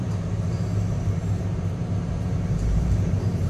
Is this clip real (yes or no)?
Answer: no